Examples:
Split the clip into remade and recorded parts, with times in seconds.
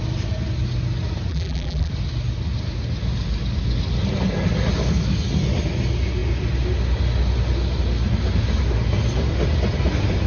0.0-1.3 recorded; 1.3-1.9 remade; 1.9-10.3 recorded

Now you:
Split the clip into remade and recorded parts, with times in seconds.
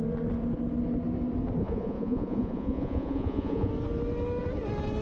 0.0-1.6 recorded; 1.6-3.7 remade; 3.7-5.0 recorded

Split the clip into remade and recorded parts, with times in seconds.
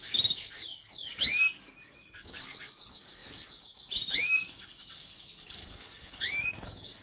0.0-7.0 remade